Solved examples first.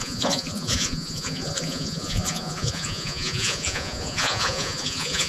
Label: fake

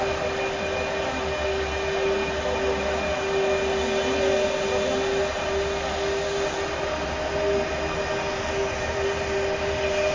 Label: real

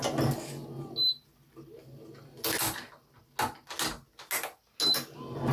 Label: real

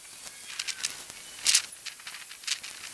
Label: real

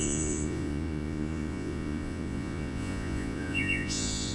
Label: fake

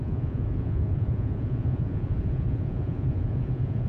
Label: fake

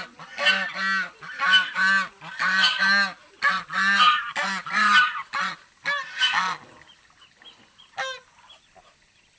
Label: real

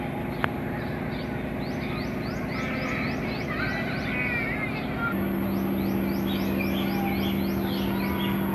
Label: real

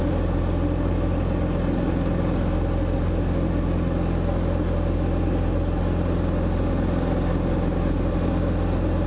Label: real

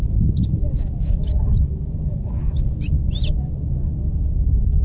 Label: real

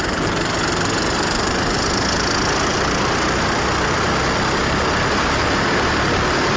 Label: real